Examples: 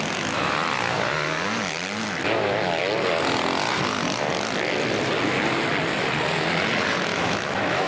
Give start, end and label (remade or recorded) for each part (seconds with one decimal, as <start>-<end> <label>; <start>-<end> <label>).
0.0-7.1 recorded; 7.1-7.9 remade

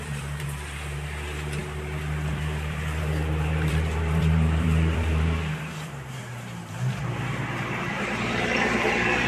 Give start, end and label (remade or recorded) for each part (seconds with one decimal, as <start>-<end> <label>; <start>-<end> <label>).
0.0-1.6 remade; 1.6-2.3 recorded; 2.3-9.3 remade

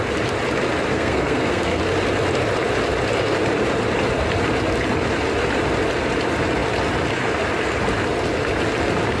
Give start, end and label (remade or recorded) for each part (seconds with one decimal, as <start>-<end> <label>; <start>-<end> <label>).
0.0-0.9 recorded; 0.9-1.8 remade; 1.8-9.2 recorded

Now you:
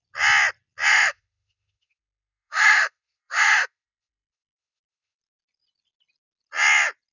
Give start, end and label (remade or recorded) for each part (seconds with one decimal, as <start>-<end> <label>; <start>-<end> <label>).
0.0-0.9 recorded; 0.9-5.2 remade; 5.2-7.1 recorded

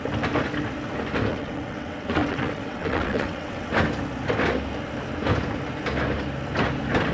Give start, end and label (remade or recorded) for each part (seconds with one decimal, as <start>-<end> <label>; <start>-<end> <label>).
0.0-1.3 recorded; 1.3-3.7 remade; 3.7-7.1 recorded

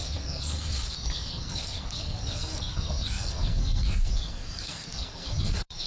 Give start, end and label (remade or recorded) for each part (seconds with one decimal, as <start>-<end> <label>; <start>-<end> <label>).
0.0-5.9 remade

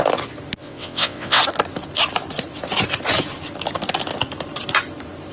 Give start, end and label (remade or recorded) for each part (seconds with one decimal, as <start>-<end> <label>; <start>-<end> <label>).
0.0-0.6 recorded; 0.6-1.4 remade; 1.4-5.3 recorded

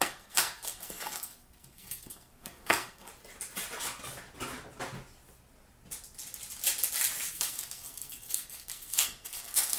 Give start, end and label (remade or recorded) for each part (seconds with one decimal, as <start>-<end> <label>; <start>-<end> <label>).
0.0-3.1 remade; 3.1-7.3 recorded; 7.3-9.8 remade